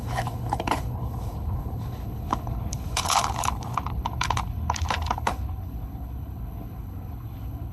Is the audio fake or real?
fake